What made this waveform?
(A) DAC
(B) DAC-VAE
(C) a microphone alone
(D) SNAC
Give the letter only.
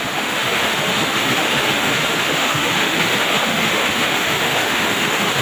B